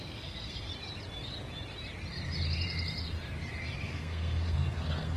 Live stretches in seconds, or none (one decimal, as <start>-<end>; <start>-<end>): 0.7-3.8